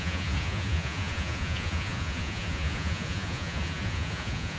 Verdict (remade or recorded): remade